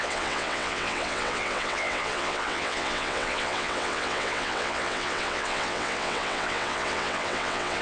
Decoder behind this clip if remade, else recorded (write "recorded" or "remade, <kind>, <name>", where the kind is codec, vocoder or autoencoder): remade, vocoder, WaveNeXt